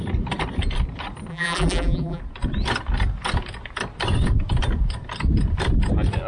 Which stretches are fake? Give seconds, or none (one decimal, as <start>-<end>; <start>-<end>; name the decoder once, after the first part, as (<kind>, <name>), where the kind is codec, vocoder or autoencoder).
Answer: 1.3-2.2 (vocoder, BigVGAN v2)